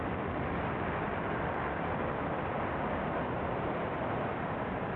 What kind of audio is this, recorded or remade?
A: remade